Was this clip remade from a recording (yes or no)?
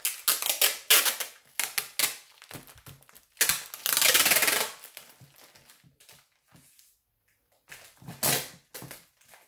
no